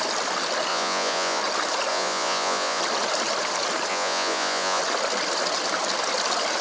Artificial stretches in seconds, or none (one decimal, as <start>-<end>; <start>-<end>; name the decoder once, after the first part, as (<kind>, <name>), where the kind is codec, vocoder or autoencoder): 0.7-1.4 (vocoder, Vocos); 1.9-2.8; 3.9-4.8